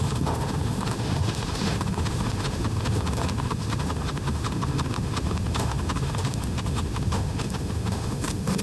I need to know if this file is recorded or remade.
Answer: remade